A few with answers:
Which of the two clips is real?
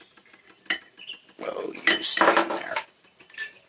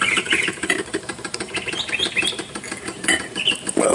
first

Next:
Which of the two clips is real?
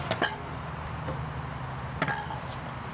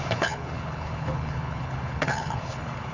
first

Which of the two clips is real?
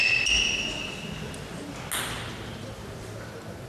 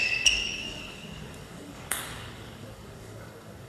first